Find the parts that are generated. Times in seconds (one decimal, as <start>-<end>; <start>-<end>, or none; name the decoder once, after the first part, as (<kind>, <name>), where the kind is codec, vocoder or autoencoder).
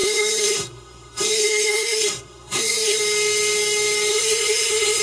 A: 0.0-3.0 (codec, SNAC); 4.1-5.0